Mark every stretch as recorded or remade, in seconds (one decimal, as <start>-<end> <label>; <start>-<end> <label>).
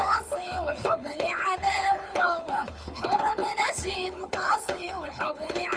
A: 0.0-5.8 remade